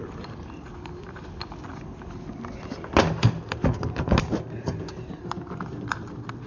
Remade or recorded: recorded